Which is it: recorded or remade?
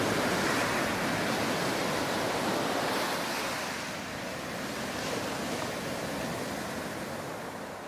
recorded